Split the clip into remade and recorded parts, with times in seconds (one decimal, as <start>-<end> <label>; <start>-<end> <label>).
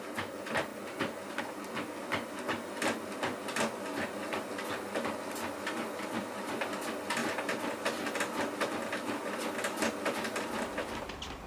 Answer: 0.0-11.5 recorded